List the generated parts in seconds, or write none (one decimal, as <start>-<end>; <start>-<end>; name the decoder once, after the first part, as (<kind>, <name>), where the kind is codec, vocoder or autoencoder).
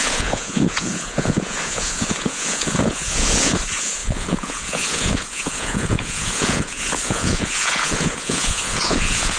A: 0.0-9.4 (vocoder, Vocos)